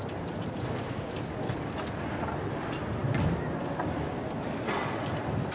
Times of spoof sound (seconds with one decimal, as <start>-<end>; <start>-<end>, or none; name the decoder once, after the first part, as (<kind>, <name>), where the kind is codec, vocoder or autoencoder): none

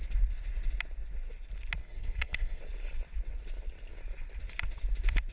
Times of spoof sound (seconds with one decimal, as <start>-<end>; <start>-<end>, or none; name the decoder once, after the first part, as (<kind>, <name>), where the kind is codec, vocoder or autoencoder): 1.8-2.6 (codec, SNAC)